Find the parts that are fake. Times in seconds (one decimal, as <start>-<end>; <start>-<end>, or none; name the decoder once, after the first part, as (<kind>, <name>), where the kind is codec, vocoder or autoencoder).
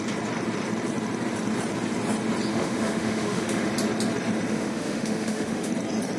2.5-3.7 (autoencoder, DAC-VAE); 4.5-5.7